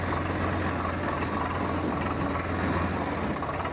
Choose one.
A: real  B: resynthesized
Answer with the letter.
A